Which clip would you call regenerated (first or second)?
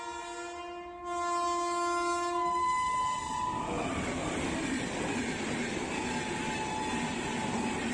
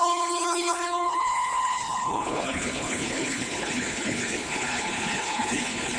second